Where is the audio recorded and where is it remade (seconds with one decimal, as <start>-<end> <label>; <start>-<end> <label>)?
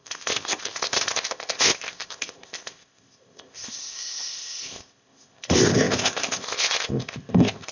0.0-7.7 remade